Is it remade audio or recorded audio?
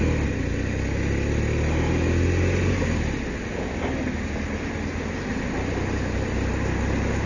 recorded